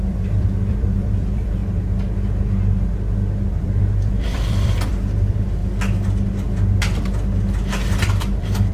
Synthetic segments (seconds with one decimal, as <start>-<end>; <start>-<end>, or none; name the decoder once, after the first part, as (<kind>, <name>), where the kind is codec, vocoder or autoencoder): 0.0-1.6 (vocoder, BigVGAN v2); 3.5-5.6; 8.2-8.7